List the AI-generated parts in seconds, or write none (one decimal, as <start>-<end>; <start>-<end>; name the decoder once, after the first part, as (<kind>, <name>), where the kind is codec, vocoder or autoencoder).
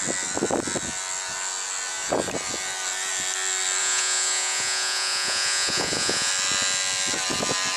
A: 3.8-6.3 (vocoder, Vocos)